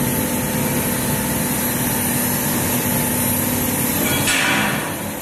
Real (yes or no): yes